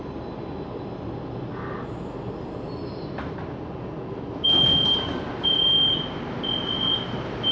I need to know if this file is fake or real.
real